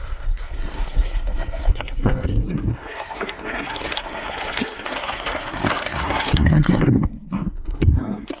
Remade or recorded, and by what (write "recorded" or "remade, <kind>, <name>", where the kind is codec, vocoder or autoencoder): remade, codec, SNAC